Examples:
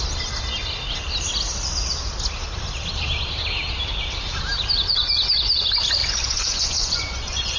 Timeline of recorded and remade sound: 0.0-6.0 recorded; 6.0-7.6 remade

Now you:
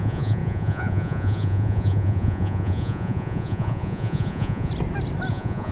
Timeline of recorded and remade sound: 0.0-4.7 remade; 4.7-5.3 recorded; 5.3-5.7 remade

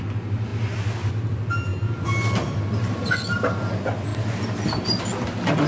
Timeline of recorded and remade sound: 0.0-5.7 recorded